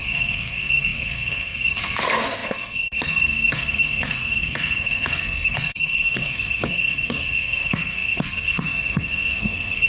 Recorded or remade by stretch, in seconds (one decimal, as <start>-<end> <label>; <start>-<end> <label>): 0.0-9.9 remade